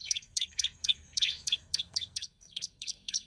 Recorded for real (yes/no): no